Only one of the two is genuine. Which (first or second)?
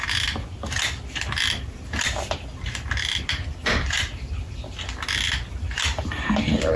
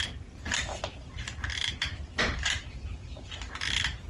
first